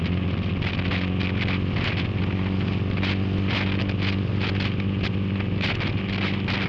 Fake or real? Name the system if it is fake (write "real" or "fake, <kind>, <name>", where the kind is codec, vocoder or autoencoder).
real